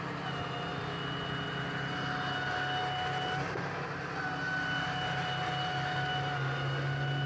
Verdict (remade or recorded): recorded